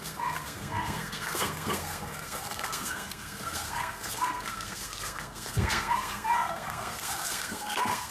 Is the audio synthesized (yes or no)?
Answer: yes